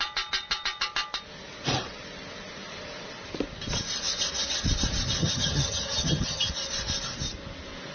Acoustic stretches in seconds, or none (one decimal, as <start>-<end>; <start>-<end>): 0.0-5.2; 6.5-7.9